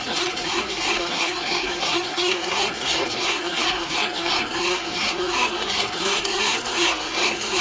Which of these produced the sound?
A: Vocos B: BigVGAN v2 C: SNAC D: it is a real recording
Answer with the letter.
C